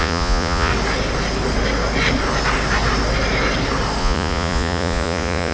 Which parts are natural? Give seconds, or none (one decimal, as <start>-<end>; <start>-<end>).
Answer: 0.7-4.0